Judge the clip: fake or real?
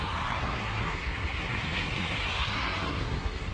fake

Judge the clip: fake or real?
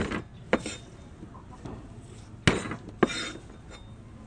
real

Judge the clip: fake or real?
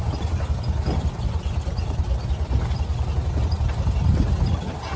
real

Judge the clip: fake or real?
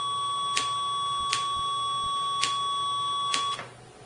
real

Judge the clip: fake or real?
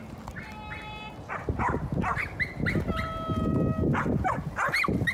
real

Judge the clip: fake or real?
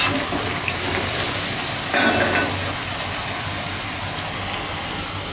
real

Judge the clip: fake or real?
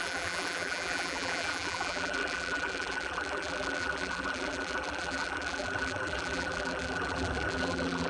fake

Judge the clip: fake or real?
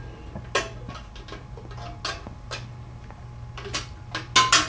real